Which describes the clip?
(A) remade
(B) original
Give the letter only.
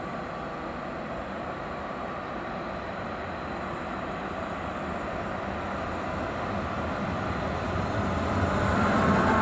B